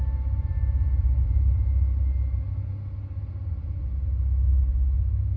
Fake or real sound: real